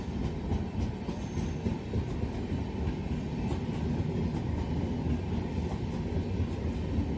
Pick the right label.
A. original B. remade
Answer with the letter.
A